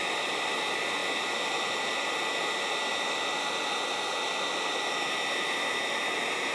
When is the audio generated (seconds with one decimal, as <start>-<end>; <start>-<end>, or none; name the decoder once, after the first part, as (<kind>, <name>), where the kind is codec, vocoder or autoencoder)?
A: none